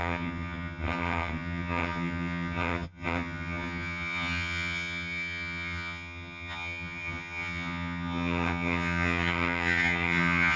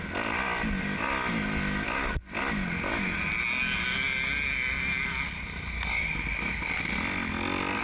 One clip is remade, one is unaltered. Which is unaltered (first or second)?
second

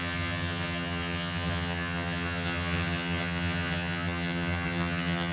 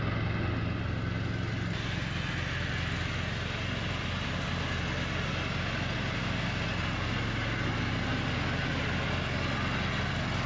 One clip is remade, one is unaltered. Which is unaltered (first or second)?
second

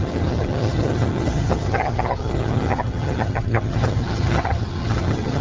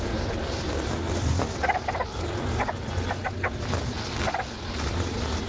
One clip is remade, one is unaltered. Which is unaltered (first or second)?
second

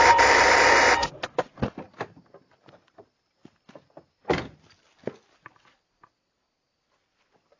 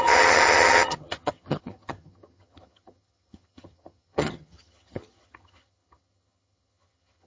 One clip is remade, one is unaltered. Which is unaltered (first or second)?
first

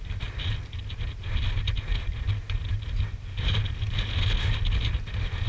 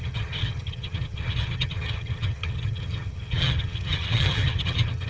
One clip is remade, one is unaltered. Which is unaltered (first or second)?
first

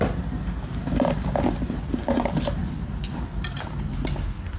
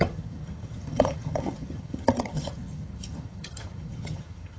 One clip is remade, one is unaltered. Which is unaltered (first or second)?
first